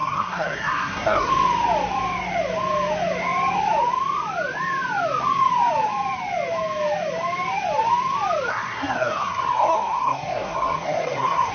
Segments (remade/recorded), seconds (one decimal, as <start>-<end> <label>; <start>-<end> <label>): 0.0-1.3 remade; 1.3-8.5 recorded; 8.5-11.5 remade